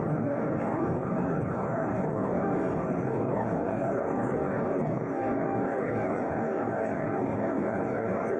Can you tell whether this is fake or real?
fake